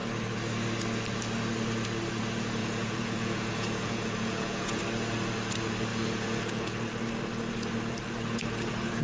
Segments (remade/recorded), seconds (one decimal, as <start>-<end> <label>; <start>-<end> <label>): 0.0-2.6 recorded; 2.6-4.8 remade; 4.8-5.9 recorded; 5.9-6.8 remade; 6.8-9.0 recorded